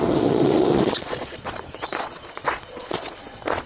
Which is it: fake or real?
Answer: fake